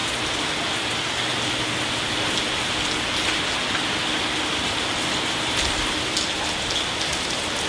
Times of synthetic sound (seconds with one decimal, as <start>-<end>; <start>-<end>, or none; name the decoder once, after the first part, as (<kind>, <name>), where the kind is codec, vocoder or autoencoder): none